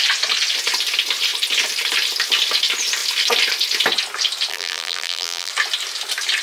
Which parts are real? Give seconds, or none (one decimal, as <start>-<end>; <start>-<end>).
0.0-4.5; 5.5-6.4

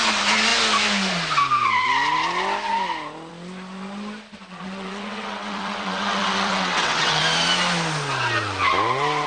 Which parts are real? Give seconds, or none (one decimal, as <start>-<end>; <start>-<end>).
0.0-4.5; 7.2-9.3